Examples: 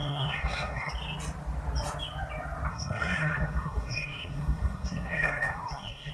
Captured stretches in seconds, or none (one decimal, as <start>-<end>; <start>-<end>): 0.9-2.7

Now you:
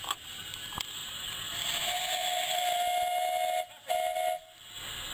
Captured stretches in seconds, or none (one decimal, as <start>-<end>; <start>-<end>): 0.0-5.1

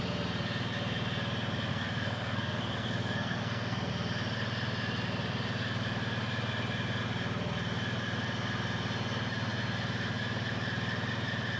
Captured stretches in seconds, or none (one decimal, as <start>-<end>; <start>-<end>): 0.0-1.7; 3.9-11.6

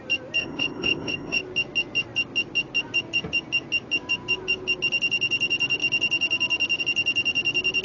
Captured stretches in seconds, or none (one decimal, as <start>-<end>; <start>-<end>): 0.0-0.4; 1.4-7.8

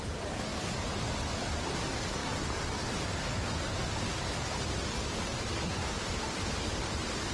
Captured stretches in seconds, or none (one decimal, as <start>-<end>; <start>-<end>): 0.0-0.5; 1.0-5.5

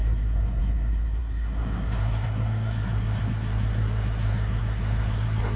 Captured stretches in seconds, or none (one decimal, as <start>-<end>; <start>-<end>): none

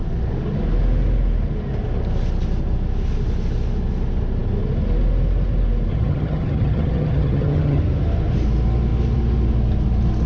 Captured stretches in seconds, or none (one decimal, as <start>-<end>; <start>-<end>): 0.0-5.9; 7.8-10.3

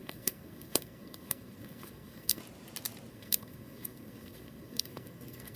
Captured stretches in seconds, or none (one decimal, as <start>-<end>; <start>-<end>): 2.4-3.1